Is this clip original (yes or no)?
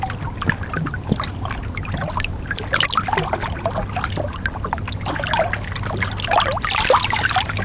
yes